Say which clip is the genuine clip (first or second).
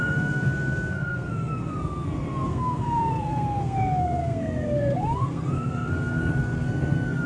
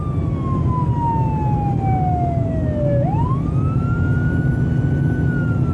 second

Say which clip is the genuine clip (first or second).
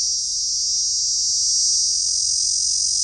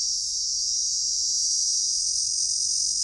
first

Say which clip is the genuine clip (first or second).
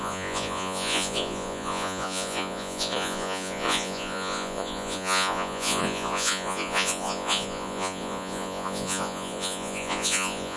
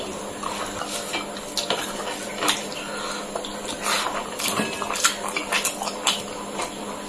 second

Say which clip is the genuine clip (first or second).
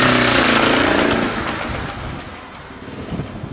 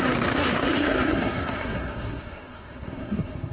first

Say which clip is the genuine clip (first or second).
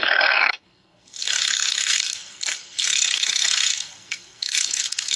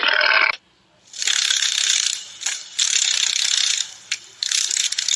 second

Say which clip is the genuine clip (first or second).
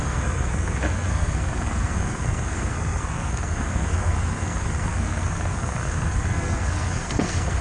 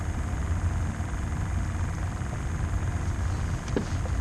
second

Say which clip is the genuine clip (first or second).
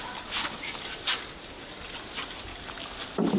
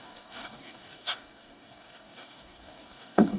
first